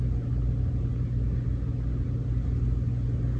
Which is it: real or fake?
real